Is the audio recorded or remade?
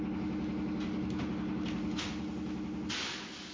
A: recorded